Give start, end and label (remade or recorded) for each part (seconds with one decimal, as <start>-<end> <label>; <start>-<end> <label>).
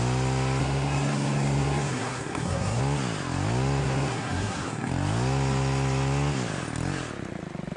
0.0-0.6 recorded; 0.6-2.8 remade; 2.8-3.8 recorded; 3.8-4.9 remade; 4.9-7.8 recorded